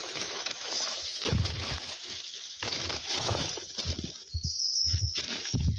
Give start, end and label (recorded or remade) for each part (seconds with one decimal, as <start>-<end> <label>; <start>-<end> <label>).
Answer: 0.0-3.5 remade; 3.5-4.8 recorded; 4.8-5.8 remade